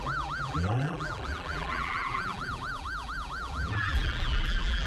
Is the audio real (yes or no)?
no